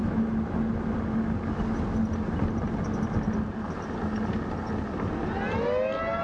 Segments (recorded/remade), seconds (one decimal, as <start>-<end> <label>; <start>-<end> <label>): 0.0-6.2 recorded